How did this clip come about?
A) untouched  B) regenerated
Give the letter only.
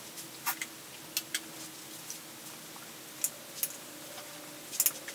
A